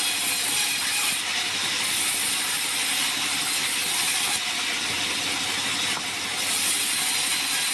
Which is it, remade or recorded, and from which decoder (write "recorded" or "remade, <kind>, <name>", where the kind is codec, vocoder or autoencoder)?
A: recorded